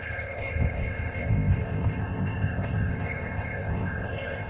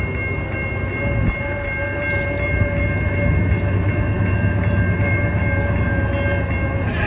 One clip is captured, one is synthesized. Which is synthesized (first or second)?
first